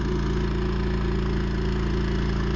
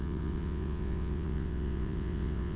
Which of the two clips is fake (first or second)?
second